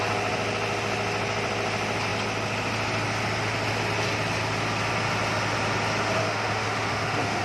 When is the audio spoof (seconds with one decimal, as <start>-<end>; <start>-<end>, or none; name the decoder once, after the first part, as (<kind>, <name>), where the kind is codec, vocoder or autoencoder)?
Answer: 6.2-7.4 (autoencoder, DAC-VAE)